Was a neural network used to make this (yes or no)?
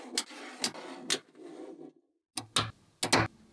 no